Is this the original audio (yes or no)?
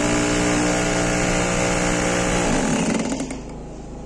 yes